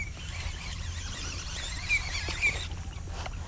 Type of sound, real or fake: real